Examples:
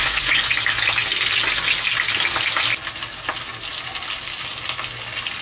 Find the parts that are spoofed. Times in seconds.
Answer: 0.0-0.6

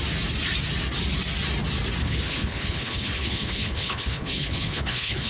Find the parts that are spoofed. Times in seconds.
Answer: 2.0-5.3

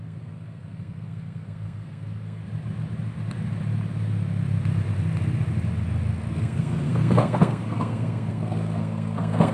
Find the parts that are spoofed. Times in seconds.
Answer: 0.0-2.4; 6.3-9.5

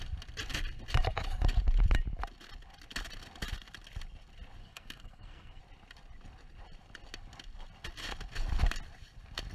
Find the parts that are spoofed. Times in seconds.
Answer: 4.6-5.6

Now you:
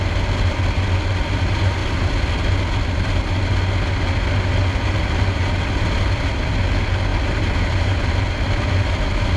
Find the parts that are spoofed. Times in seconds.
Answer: none